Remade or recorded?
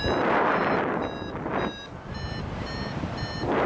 recorded